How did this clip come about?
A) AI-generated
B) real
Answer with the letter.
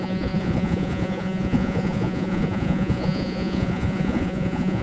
A